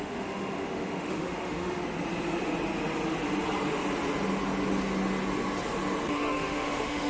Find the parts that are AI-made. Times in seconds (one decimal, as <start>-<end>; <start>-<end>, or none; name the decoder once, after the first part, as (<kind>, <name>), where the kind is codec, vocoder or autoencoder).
0.0-1.8 (autoencoder, DAC-VAE); 6.1-7.1